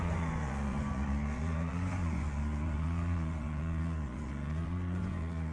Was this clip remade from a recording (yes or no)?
yes